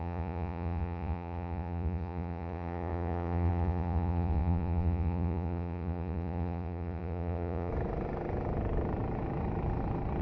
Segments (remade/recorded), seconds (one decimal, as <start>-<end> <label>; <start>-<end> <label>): 0.0-7.7 remade; 7.7-10.2 recorded